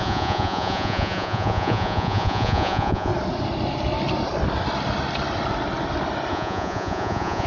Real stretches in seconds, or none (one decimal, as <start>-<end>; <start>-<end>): 3.1-6.3